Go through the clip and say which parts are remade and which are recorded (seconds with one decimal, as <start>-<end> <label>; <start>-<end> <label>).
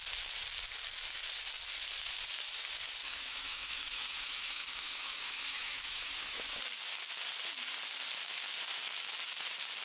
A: 0.0-3.0 recorded; 3.0-6.6 remade; 6.6-8.2 recorded; 8.2-9.1 remade; 9.1-9.8 recorded